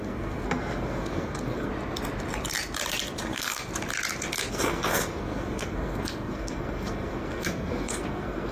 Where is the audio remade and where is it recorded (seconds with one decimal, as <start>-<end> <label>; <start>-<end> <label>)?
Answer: 0.0-1.7 remade; 1.7-3.2 recorded; 3.2-3.7 remade; 3.7-4.5 recorded; 4.5-8.5 remade